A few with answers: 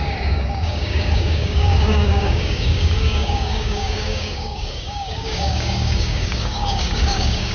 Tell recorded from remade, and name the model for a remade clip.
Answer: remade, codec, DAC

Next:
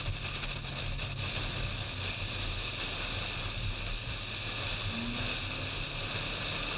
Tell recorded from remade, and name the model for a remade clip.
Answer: recorded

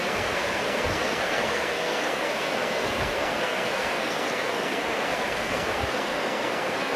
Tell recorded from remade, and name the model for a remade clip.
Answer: remade, codec, SNAC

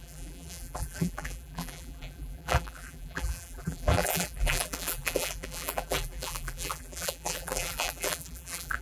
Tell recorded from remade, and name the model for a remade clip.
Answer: remade, vocoder, BigVGAN v2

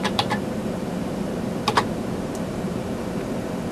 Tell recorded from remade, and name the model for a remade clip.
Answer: remade, vocoder, BigVGAN v2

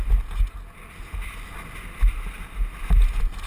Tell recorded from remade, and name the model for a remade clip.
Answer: recorded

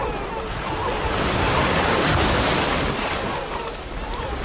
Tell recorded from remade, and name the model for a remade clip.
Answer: recorded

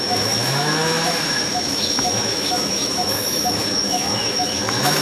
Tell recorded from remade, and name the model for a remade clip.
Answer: remade, autoencoder, DAC-VAE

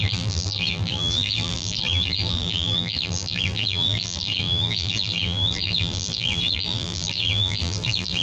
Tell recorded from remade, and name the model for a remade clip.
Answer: remade, vocoder, BigVGAN v2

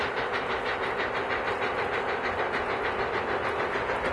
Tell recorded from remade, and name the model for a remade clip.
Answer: recorded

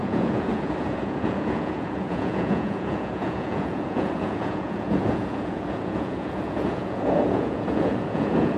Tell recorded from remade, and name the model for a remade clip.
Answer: remade, vocoder, Vocos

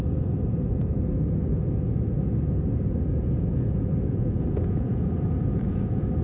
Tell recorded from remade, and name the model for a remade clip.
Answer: remade, vocoder, Vocos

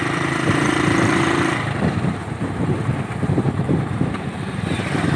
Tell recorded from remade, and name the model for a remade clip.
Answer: remade, vocoder, BigVGAN v2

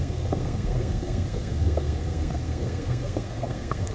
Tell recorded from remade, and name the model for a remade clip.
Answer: remade, codec, SNAC